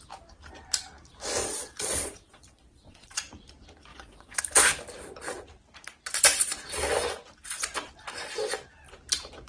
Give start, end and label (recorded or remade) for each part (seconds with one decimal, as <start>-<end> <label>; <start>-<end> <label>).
0.0-1.4 recorded; 1.4-3.2 remade; 3.2-3.9 recorded; 3.9-4.4 remade; 4.4-9.5 recorded